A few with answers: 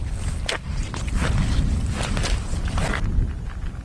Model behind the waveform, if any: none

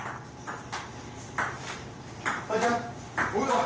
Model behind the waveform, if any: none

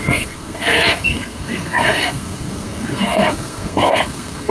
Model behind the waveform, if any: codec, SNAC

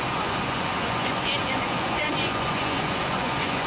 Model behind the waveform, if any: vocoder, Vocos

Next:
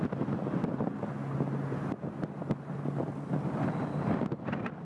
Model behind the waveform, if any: none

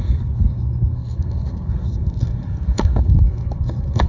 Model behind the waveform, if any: codec, SNAC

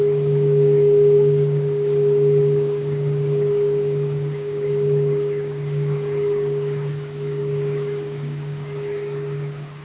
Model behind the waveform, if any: codec, DAC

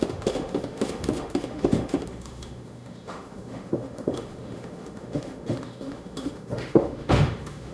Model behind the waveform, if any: autoencoder, DAC-VAE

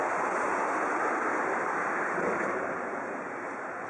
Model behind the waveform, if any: none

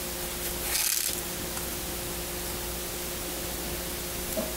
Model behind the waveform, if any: none